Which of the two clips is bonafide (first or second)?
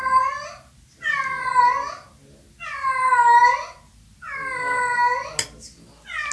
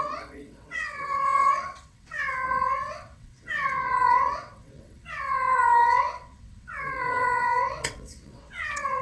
first